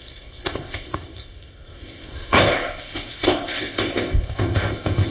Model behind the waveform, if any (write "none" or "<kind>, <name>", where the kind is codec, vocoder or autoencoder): codec, ZipCodec